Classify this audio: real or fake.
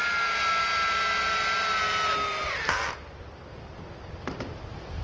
real